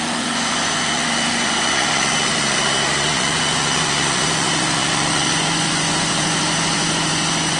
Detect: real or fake fake